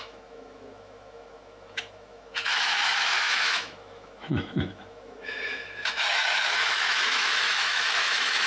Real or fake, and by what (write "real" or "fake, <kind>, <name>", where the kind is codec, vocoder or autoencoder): fake, autoencoder, DAC-VAE